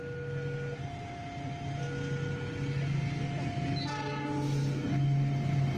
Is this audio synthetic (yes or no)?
no